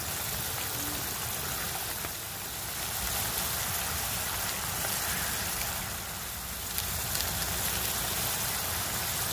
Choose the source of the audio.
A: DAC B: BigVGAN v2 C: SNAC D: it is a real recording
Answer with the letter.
D